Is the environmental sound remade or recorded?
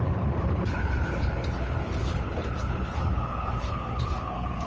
remade